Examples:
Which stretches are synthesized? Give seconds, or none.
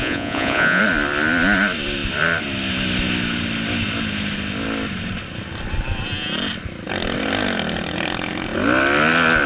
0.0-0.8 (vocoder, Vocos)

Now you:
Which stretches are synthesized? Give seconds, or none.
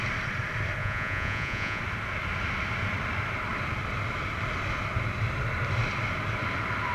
0.8-1.8 (vocoder, Vocos)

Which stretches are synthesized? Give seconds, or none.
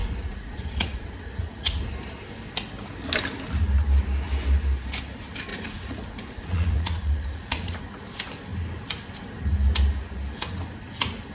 0.0-1.8 (vocoder, Vocos); 5.5-7.8